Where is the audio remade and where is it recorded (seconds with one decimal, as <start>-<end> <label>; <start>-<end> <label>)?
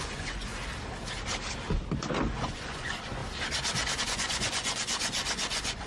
0.0-0.5 remade; 0.5-2.4 recorded; 2.4-3.2 remade; 3.2-4.0 recorded; 4.0-5.9 remade